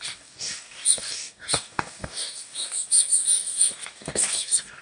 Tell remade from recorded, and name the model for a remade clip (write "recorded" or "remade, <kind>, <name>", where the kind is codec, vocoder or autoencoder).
remade, codec, DAC